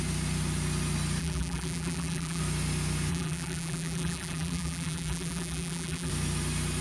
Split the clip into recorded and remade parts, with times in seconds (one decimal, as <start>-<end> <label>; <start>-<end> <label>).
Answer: 0.0-1.2 recorded; 1.2-2.4 remade; 2.4-3.1 recorded; 3.1-6.1 remade; 6.1-6.8 recorded